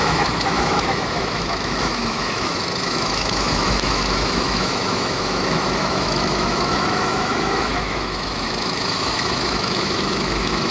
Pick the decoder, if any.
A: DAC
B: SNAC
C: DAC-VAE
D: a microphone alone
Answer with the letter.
C